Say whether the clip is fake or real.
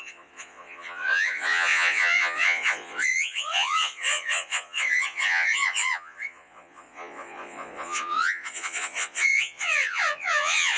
fake